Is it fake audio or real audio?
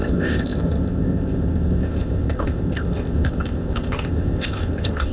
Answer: fake